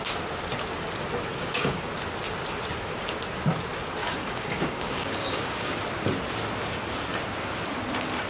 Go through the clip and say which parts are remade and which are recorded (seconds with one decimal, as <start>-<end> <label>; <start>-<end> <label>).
0.0-1.3 recorded; 1.3-1.9 remade; 1.9-4.0 recorded; 4.0-5.7 remade; 5.7-8.3 recorded